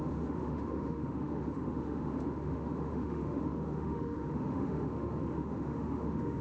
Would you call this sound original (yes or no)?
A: no